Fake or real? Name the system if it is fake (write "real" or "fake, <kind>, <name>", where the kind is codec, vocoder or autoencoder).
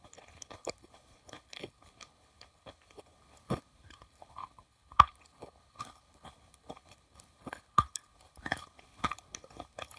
fake, codec, HILCodec